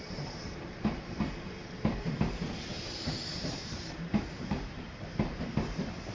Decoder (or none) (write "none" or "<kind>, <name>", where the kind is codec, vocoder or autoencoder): vocoder, BigVGAN v2